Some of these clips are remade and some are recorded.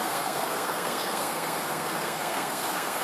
remade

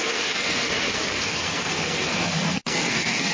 remade